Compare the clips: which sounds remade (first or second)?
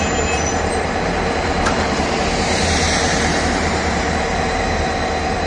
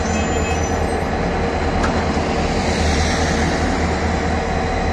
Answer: first